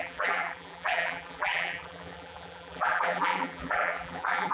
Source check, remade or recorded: remade